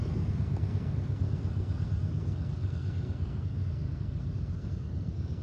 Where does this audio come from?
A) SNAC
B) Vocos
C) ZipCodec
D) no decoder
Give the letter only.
A